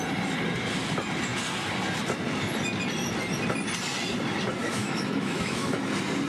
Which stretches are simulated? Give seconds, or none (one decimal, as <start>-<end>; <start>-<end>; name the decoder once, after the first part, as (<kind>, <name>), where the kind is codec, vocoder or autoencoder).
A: 4.6-5.8 (autoencoder, DAC-VAE)